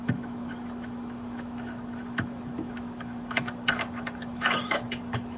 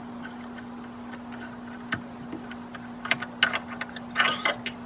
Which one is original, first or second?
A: second